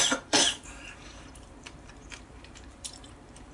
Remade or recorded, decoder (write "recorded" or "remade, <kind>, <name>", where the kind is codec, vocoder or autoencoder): remade, vocoder, BigVGAN v2